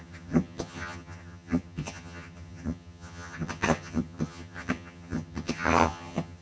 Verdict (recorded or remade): remade